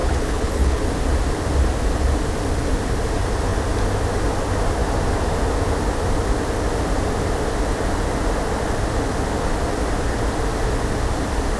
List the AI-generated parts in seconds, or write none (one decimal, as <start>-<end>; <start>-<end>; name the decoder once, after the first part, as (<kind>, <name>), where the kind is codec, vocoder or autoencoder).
0.0-0.8 (codec, HILCodec)

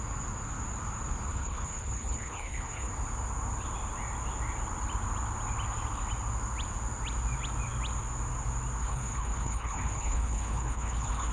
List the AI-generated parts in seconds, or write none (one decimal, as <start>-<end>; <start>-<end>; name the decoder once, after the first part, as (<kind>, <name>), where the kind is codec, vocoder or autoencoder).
1.3-2.9 (codec, HILCodec); 8.8-11.3

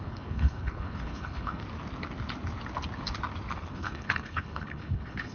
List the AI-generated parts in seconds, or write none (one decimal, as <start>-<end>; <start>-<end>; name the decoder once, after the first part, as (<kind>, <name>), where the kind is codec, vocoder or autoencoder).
0.0-1.6 (codec, HILCodec); 3.7-5.3

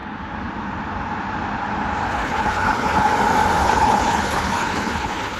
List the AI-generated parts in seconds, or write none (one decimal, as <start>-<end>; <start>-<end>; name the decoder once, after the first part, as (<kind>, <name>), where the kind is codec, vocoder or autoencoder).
2.1-3.1 (codec, HILCodec); 3.6-5.4

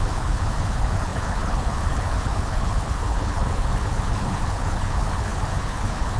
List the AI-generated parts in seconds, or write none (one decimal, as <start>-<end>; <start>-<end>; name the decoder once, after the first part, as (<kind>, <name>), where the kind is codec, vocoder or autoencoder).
0.0-6.2 (codec, HILCodec)

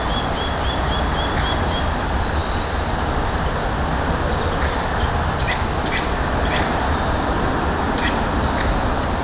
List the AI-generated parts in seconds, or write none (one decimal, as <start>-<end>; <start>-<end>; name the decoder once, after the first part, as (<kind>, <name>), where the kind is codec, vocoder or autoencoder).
none

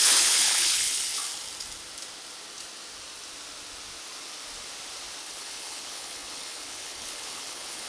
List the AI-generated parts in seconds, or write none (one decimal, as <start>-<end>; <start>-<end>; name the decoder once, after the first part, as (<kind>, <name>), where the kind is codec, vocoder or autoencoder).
0.0-1.1 (codec, HILCodec); 5.2-7.9

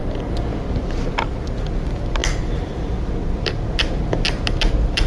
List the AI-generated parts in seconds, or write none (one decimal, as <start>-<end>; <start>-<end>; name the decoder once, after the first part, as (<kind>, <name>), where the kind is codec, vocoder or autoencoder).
none